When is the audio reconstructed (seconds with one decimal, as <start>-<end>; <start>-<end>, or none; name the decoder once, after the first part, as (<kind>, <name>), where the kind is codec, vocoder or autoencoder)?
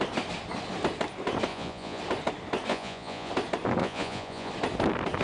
1.5-2.0 (vocoder, Vocos); 2.7-3.3; 3.8-4.5